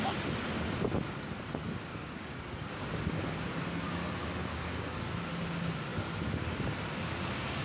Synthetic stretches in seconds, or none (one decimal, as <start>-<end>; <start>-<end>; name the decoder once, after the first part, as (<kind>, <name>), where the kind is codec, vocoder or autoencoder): 1.9-2.8 (codec, DAC); 4.5-5.0